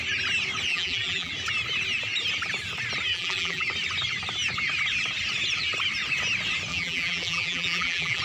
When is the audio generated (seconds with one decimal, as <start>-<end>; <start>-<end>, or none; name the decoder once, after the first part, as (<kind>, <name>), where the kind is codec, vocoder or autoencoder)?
0.7-1.3 (vocoder, BigVGAN v2); 3.1-3.6; 6.7-8.2

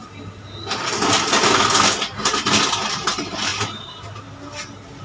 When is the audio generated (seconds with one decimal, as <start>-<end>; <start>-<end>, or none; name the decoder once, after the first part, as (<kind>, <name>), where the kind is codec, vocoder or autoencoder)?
3.0-3.5 (vocoder, BigVGAN v2)